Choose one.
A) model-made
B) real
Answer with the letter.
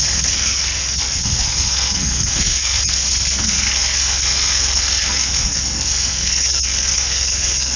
A